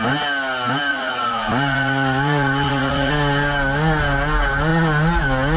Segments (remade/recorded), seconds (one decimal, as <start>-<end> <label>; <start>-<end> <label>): 0.0-0.9 recorded; 0.9-3.1 remade; 3.1-5.6 recorded